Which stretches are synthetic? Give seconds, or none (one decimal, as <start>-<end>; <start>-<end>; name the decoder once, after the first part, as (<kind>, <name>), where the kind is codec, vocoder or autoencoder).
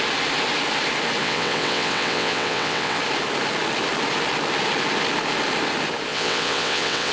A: 1.2-3.0 (vocoder, WaveNeXt); 6.1-7.1